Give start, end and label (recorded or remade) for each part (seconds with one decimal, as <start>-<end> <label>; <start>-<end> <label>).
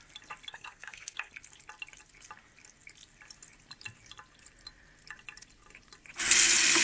0.0-0.5 recorded; 0.5-1.3 remade; 1.3-6.8 recorded